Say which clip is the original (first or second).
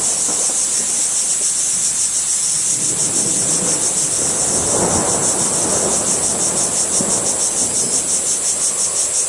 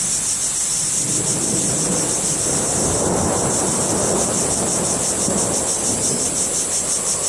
first